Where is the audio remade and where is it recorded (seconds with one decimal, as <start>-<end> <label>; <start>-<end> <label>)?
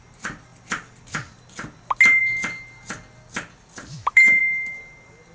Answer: 0.0-3.9 recorded; 3.9-4.4 remade; 4.4-5.3 recorded